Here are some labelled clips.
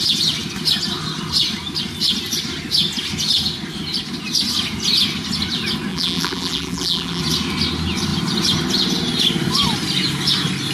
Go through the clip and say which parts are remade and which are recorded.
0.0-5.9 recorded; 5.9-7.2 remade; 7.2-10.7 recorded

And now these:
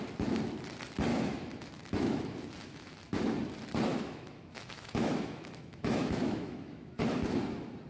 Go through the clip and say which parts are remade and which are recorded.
0.0-1.1 recorded; 1.1-3.5 remade; 3.5-3.9 recorded; 3.9-7.0 remade; 7.0-7.9 recorded

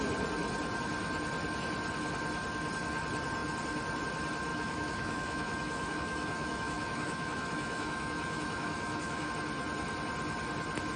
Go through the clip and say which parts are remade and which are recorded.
0.0-4.5 recorded; 4.5-9.3 remade; 9.3-11.0 recorded

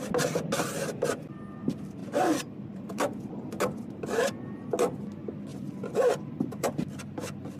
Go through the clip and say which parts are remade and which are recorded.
0.0-2.0 recorded; 2.0-3.3 remade; 3.3-5.5 recorded; 5.5-6.7 remade; 6.7-7.6 recorded

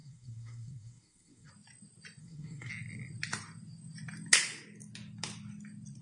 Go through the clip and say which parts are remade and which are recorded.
0.0-1.5 remade; 1.5-2.2 recorded; 2.2-2.7 remade; 2.7-6.0 recorded

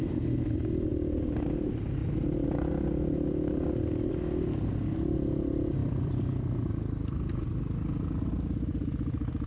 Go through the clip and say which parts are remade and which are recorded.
0.0-0.9 recorded; 0.9-1.4 remade; 1.4-2.0 recorded; 2.0-2.7 remade; 2.7-5.8 recorded; 5.8-6.7 remade; 6.7-9.5 recorded

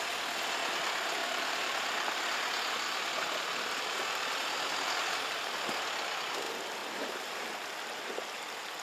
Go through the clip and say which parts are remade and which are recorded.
0.0-1.2 recorded; 1.2-6.3 remade; 6.3-6.8 recorded; 6.8-7.4 remade; 7.4-8.8 recorded